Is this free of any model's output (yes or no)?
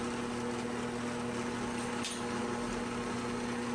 yes